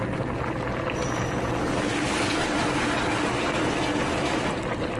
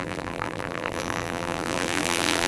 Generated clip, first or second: second